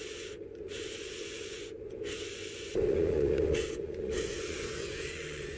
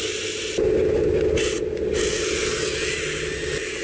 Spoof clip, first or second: first